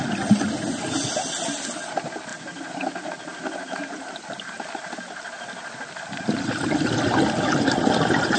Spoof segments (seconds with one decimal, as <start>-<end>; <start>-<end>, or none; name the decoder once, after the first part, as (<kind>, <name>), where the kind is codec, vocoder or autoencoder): none